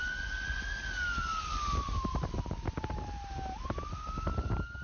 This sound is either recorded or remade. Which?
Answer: recorded